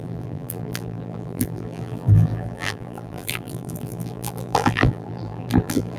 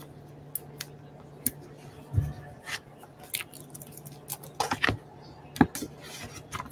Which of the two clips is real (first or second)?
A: second